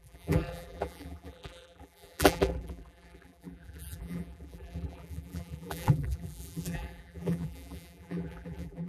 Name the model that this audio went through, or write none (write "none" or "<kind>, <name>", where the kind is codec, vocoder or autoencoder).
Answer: vocoder, BigVGAN v2